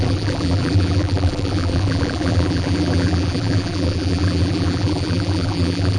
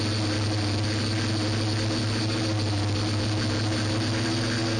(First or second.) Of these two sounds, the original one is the second